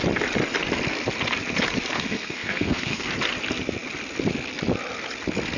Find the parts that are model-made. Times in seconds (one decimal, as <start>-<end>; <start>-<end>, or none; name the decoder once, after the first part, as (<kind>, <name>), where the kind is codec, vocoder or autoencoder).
1.9-3.1 (codec, SNAC)